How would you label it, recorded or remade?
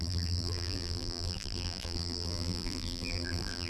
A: remade